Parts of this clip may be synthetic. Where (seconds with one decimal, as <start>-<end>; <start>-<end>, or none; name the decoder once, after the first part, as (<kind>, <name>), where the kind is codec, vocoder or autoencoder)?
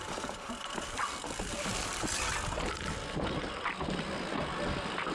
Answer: 0.0-1.7 (vocoder, BigVGAN v2); 4.4-5.1